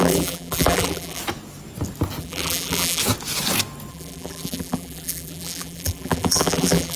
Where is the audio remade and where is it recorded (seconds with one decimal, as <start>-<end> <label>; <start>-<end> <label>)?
0.0-1.2 remade; 1.2-2.2 recorded; 2.2-3.0 remade; 3.0-3.9 recorded; 3.9-7.0 remade